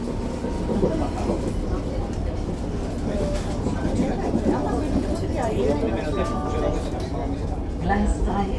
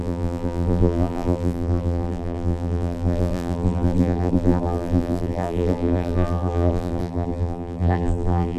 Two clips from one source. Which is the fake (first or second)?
second